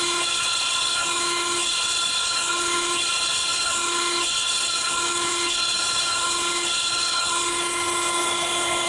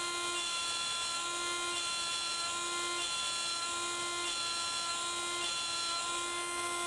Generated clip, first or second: first